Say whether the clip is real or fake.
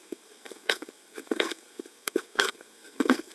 fake